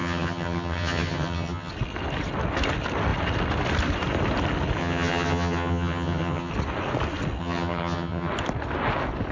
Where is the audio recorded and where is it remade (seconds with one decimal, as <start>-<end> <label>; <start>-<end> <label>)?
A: 0.0-1.7 remade; 1.7-4.8 recorded; 4.8-6.5 remade; 6.5-7.4 recorded; 7.4-8.3 remade; 8.3-9.3 recorded